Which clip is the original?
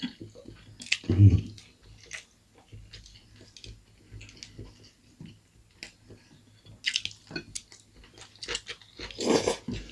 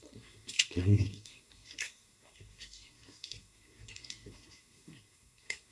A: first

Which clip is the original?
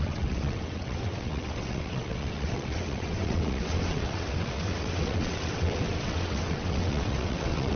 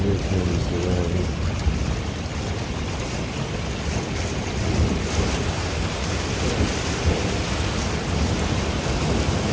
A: second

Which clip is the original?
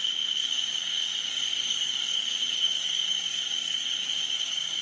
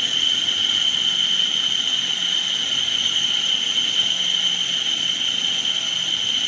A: second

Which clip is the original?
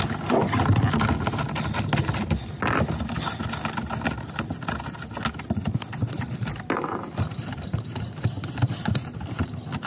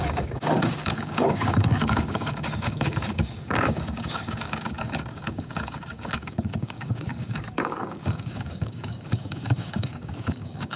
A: first